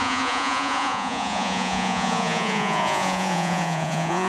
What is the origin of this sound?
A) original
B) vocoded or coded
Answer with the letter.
B